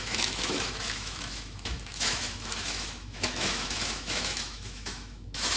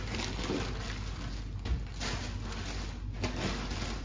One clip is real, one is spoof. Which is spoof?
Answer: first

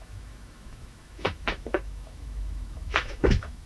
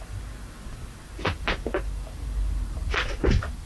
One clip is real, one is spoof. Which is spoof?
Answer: first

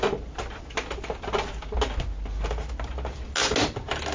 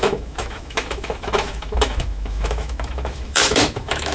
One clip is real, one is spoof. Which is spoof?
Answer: second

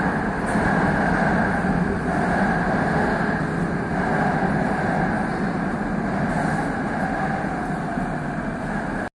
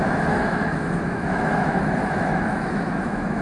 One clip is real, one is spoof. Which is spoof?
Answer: second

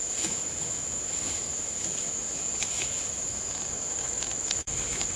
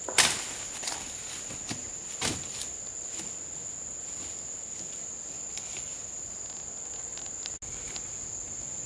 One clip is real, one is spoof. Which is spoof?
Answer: first